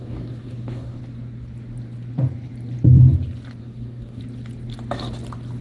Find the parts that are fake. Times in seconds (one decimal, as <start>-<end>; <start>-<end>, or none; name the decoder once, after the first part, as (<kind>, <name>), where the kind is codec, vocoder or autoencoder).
0.0-1.0 (codec, DAC); 3.6-4.2